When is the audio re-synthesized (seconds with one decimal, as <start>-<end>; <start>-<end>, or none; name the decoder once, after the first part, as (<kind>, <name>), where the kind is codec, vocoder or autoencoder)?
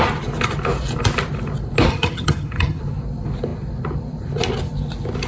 1.9-2.8 (vocoder, HiFi-GAN)